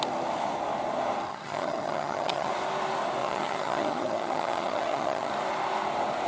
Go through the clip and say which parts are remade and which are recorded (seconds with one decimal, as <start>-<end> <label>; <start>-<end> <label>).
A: 0.0-1.3 recorded; 1.3-2.5 remade; 2.5-3.2 recorded; 3.2-5.3 remade; 5.3-6.3 recorded